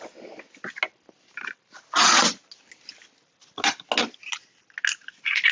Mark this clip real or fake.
real